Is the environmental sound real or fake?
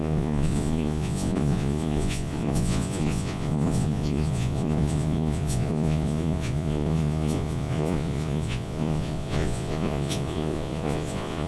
fake